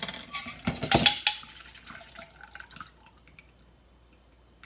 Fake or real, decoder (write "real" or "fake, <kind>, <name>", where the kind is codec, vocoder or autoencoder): real